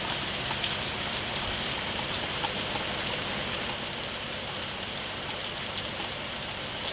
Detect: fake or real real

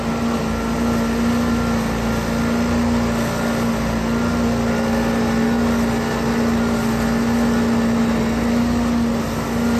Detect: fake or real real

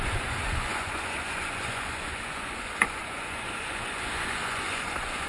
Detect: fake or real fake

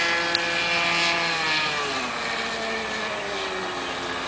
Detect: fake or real real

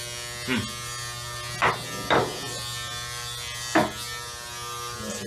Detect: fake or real real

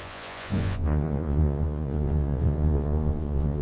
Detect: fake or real fake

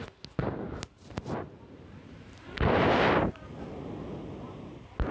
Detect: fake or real real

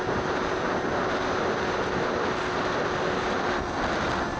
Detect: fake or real real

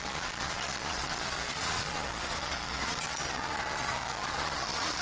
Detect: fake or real fake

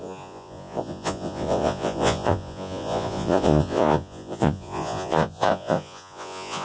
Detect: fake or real fake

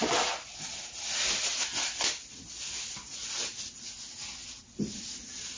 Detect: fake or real real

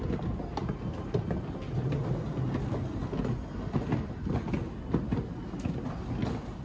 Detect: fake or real real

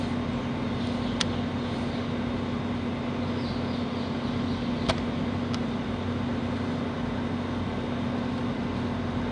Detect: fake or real real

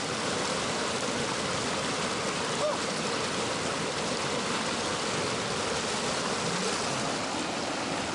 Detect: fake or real real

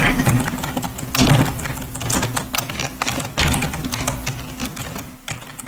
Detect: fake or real real